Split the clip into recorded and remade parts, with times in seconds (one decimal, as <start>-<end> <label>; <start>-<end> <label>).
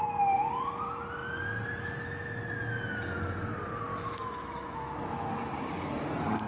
0.0-3.9 recorded; 3.9-5.3 remade; 5.3-6.5 recorded